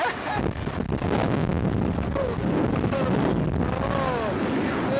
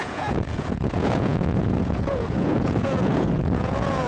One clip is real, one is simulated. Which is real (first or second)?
first